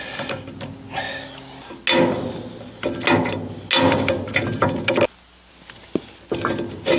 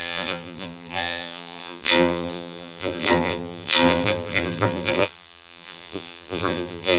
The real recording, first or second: first